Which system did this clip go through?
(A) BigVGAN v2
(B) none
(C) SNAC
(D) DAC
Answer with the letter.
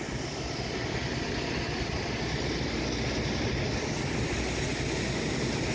B